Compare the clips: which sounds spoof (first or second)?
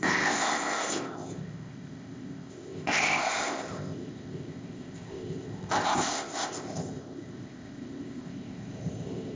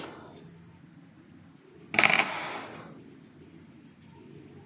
first